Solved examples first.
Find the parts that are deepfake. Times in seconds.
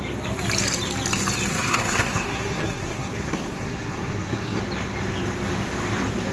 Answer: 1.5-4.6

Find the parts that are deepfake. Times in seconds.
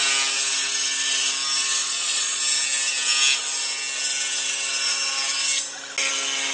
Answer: 1.8-2.4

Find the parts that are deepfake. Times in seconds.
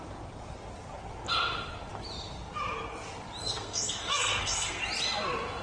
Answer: 3.4-4.8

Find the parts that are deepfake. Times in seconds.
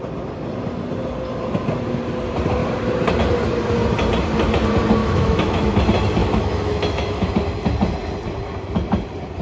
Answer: 5.0-5.8; 6.2-7.3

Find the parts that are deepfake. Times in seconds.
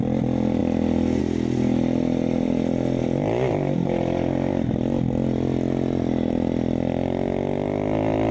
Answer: none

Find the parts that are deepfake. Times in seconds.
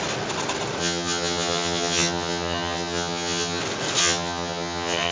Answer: 0.8-3.6; 4.0-5.1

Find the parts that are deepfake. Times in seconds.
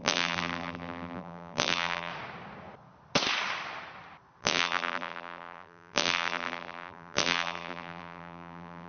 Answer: 0.0-2.1; 4.4-8.9